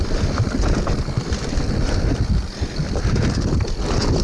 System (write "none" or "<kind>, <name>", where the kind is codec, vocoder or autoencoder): none